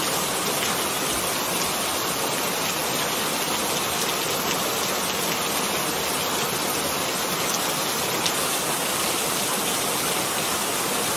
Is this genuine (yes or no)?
yes